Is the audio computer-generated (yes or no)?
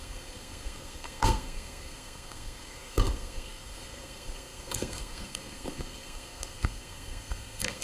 yes